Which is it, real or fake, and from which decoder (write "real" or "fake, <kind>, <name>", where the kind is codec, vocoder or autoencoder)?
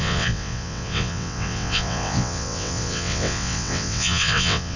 fake, vocoder, WaveNeXt